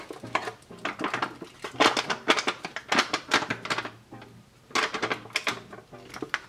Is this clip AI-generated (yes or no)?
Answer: no